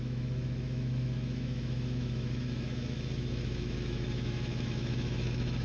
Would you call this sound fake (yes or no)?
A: yes